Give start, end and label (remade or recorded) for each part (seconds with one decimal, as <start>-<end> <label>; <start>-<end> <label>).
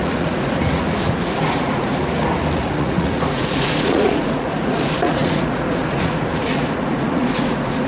0.0-2.0 remade; 2.0-2.6 recorded; 2.6-7.9 remade